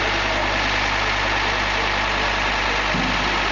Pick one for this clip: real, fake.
real